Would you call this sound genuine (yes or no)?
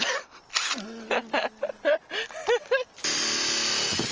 yes